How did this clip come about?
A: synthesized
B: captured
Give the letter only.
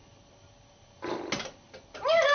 B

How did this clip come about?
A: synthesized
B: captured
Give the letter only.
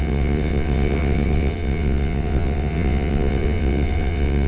A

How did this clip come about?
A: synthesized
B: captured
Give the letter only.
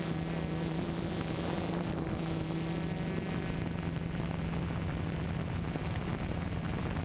B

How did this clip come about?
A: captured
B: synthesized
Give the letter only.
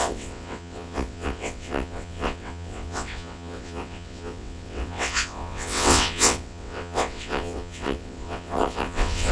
B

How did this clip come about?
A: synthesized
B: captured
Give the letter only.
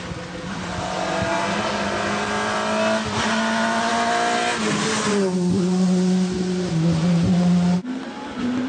B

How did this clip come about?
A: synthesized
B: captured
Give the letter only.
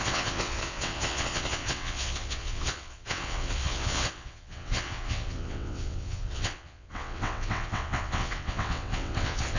A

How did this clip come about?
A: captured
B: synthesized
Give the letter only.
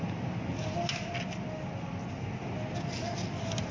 A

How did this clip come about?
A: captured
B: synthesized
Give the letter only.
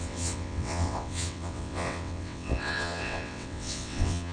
B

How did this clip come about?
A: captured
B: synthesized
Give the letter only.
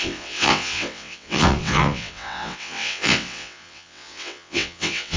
B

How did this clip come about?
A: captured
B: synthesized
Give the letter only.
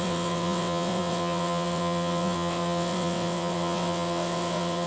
B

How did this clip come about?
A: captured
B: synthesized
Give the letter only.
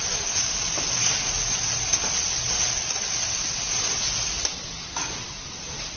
A